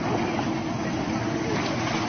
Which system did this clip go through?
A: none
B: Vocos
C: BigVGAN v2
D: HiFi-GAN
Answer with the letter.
A